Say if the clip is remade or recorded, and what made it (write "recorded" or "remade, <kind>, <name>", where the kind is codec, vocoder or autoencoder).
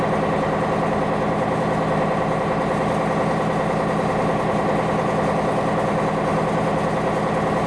recorded